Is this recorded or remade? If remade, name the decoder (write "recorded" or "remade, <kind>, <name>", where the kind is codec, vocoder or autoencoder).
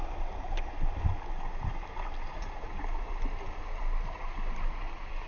recorded